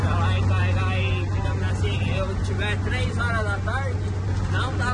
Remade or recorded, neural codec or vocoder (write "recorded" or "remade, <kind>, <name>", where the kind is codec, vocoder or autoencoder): recorded